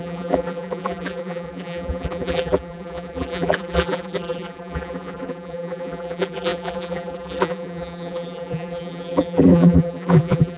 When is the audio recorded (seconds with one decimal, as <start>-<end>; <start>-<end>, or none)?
none